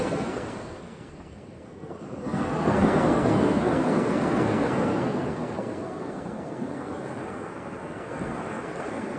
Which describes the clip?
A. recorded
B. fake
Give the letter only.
B